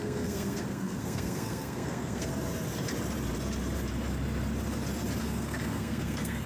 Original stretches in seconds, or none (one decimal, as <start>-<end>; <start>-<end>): 2.3-5.2